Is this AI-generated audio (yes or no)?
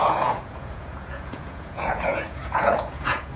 yes